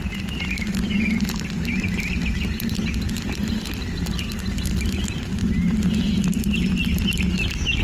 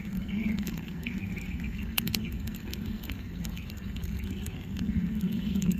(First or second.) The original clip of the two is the first